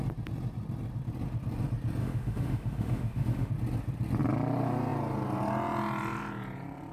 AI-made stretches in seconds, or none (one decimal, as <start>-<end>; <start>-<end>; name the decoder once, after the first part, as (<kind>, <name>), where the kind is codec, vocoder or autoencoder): 2.0-3.5 (autoencoder, DAC-VAE)